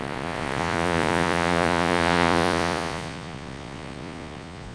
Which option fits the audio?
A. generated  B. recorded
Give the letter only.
A